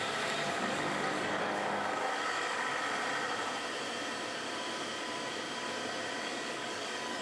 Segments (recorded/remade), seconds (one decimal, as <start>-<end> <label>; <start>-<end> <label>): 0.0-2.7 remade; 2.7-6.2 recorded; 6.2-7.2 remade